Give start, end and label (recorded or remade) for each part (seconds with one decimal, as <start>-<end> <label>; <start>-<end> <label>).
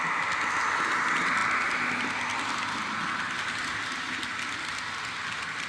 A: 0.0-5.7 recorded